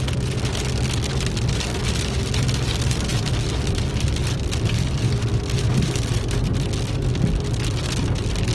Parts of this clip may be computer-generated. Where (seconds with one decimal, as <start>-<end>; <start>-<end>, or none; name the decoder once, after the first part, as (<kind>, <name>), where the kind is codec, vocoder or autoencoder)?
none